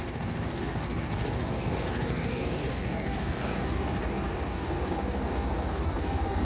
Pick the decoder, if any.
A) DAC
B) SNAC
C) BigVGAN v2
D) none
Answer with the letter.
A